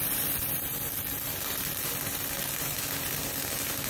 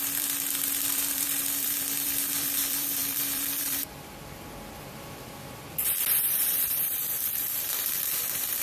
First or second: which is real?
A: first